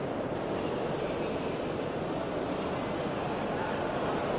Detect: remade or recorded recorded